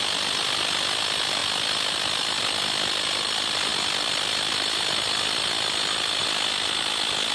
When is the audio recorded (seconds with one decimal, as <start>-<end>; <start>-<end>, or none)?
0.0-7.3